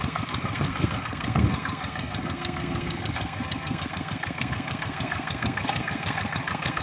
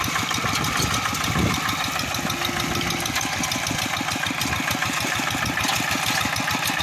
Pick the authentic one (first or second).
second